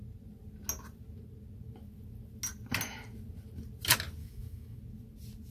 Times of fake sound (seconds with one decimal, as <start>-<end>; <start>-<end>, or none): 4.2-4.8